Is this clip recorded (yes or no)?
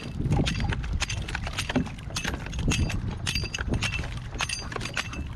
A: yes